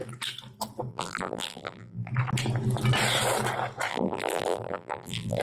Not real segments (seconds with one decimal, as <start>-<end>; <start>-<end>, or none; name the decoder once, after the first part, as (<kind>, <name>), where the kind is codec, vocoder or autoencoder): 0.9-2.1 (vocoder, BigVGAN v2); 3.9-5.4